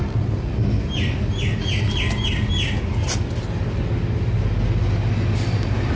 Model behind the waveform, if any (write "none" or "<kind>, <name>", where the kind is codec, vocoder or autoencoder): none